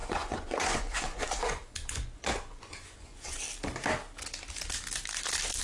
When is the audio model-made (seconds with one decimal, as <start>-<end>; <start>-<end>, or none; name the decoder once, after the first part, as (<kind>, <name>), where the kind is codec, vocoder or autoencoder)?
0.0-3.4 (vocoder, Vocos)

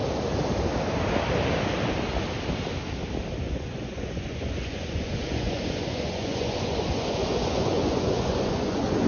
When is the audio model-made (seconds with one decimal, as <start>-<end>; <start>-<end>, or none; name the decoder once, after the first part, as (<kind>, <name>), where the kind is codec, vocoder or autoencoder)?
3.4-9.1 (vocoder, Vocos)

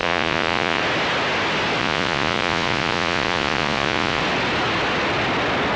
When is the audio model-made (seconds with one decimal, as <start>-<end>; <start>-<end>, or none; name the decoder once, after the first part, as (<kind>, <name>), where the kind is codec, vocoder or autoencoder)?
0.0-0.8 (vocoder, Vocos); 1.8-4.2

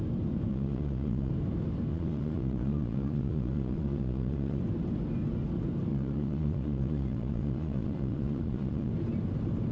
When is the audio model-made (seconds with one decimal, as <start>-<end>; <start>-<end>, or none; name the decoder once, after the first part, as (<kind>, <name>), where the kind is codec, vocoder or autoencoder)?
0.5-1.3 (vocoder, Vocos); 1.9-4.6; 5.9-8.9

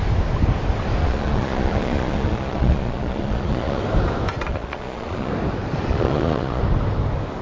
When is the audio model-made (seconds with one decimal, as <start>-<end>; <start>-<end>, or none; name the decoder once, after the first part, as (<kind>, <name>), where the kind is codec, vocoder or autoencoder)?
1.0-3.8 (vocoder, Vocos); 4.5-5.3; 5.9-6.6

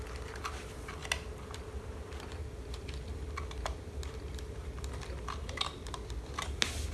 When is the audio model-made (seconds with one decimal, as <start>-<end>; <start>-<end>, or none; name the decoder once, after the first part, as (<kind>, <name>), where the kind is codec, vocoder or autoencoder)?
none

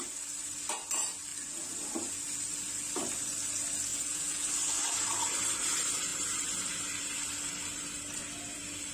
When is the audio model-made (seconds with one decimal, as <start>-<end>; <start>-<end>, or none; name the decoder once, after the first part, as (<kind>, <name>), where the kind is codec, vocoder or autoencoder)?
3.9-4.5 (vocoder, Vocos)